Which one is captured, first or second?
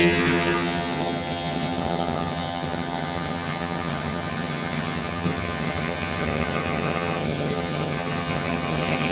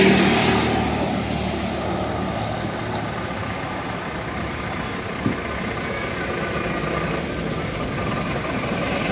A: second